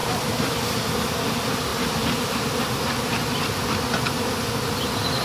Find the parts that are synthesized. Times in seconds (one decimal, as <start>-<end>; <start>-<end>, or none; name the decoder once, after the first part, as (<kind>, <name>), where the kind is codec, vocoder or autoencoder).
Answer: 0.0-0.5 (vocoder, BigVGAN v2)